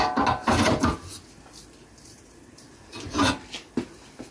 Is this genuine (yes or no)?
yes